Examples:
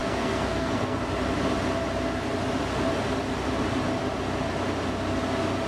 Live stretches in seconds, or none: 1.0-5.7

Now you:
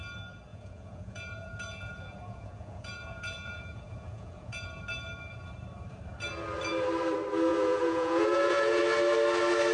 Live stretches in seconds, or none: 0.0-0.5; 4.8-7.5; 8.8-9.7

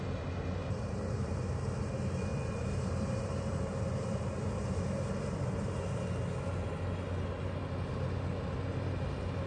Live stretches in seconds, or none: 0.0-0.6; 1.3-2.3; 6.0-9.5

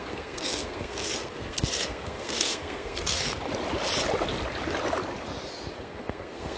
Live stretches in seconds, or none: 3.3-5.7

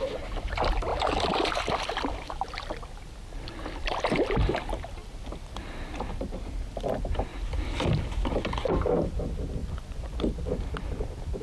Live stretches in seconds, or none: 0.0-9.6; 10.2-11.4